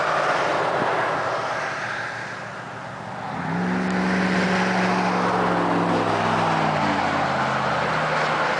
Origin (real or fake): real